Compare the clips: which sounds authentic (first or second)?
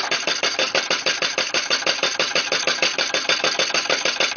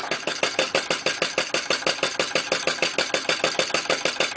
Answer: second